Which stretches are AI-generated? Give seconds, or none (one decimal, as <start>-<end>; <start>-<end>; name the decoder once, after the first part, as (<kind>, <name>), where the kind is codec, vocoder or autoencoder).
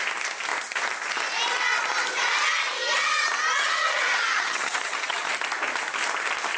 3.6-5.3 (vocoder, HiFi-GAN)